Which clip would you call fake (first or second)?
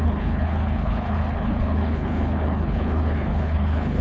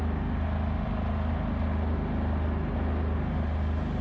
first